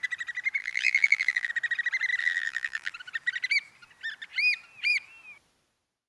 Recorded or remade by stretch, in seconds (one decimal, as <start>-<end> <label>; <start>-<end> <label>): 0.0-0.6 recorded; 0.6-1.5 remade; 1.5-2.2 recorded; 2.2-2.9 remade; 2.9-6.1 recorded